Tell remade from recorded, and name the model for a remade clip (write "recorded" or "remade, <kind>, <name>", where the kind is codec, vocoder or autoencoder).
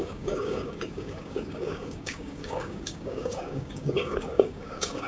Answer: remade, codec, DAC